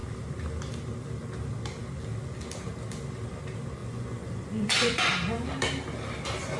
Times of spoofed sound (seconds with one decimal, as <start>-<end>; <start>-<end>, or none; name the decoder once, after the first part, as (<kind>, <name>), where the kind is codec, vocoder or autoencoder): 3.8-5.1 (vocoder, Vocos)